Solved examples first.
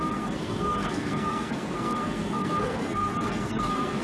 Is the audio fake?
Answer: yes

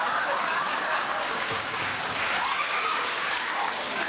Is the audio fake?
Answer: yes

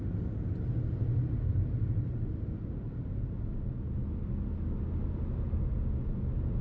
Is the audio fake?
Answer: no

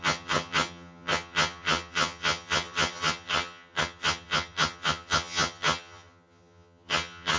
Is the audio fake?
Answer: yes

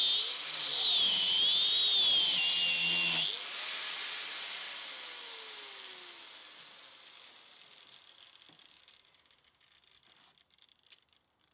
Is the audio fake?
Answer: no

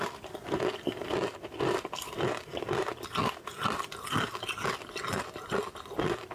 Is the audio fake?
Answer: no